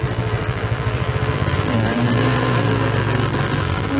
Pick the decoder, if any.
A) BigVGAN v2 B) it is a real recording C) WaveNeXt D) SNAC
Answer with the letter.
A